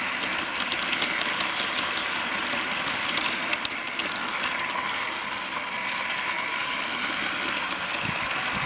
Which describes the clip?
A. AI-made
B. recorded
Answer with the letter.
B